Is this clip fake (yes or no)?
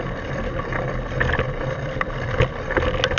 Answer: no